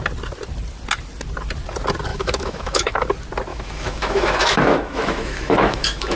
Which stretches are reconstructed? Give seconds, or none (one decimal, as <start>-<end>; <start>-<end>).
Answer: 2.1-3.0; 3.5-6.2